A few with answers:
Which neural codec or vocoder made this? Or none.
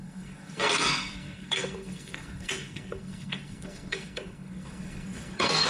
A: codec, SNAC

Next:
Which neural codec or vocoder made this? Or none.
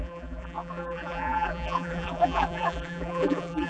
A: vocoder, BigVGAN v2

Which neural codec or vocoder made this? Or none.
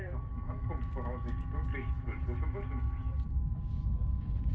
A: none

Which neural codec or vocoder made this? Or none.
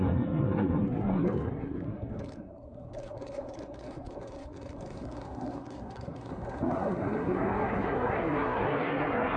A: codec, SNAC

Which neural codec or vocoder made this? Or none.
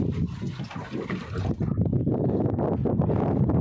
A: none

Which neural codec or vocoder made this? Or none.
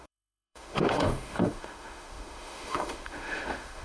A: autoencoder, DAC-VAE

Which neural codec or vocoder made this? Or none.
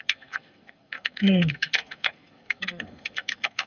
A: codec, SNAC